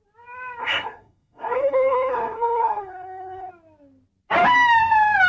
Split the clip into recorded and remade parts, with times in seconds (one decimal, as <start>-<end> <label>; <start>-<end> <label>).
0.0-0.6 recorded; 0.6-3.5 remade; 3.5-5.3 recorded